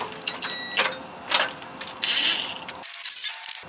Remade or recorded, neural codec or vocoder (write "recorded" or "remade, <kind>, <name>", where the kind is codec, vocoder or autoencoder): recorded